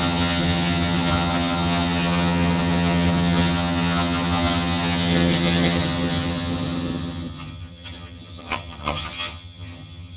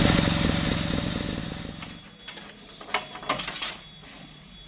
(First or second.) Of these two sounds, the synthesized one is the first